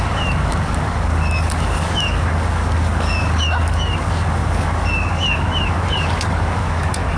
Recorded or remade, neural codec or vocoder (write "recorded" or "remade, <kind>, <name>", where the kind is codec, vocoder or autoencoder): remade, codec, DAC